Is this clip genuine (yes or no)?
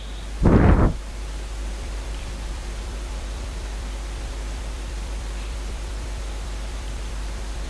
no